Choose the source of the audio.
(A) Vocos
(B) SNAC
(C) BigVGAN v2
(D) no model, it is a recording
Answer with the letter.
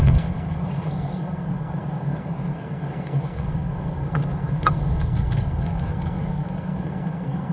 B